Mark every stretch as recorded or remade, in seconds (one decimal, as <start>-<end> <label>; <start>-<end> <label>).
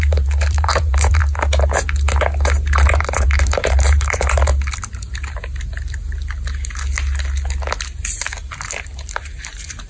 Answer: 0.0-1.2 remade; 1.2-2.9 recorded; 2.9-4.5 remade; 4.5-8.4 recorded; 8.4-9.9 remade